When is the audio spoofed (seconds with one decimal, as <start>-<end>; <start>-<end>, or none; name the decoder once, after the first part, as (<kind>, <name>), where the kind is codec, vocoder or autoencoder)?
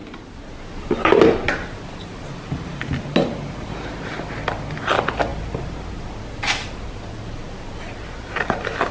none